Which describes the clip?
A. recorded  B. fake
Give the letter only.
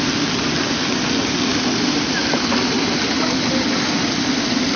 A